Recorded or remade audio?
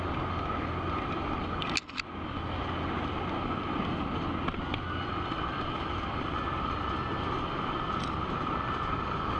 recorded